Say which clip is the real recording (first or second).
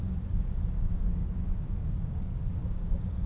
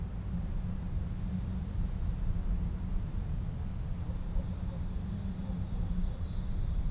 second